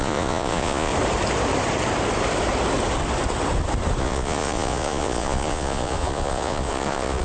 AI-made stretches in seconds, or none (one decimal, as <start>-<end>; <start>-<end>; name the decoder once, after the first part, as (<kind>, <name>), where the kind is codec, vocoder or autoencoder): 0.0-0.9 (vocoder, Vocos); 4.0-7.2